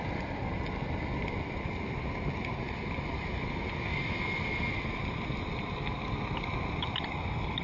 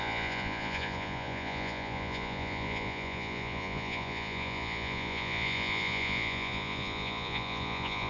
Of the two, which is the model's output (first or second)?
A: second